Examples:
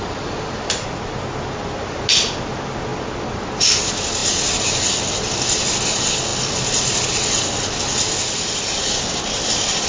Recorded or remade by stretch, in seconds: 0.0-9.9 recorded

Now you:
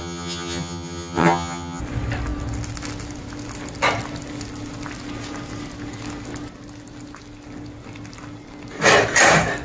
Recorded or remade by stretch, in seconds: 0.0-1.8 remade; 1.8-9.6 recorded